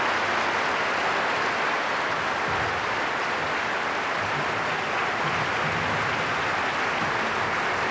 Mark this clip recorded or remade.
recorded